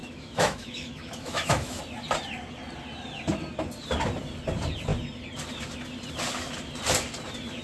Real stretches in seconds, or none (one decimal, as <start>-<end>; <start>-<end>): 1.8-7.6